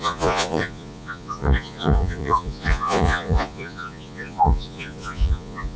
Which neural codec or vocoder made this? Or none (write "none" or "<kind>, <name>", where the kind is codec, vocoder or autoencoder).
vocoder, Vocos